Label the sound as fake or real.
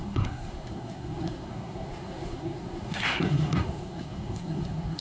fake